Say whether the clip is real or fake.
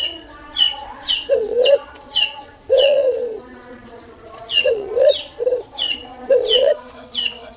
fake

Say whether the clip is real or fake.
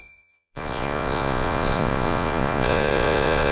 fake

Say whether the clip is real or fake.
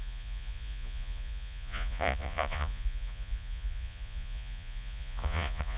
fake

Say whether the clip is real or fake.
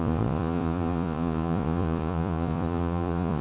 fake